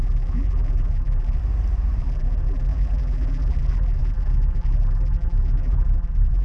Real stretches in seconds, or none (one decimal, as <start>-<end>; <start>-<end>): 1.4-2.0